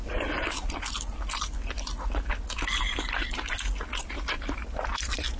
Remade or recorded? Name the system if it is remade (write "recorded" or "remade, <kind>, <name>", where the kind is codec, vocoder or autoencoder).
recorded